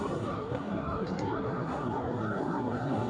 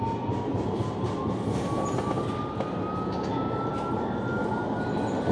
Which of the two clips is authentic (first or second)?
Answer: second